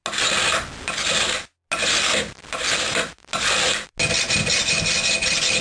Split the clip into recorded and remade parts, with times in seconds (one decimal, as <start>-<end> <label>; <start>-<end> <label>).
0.0-5.6 recorded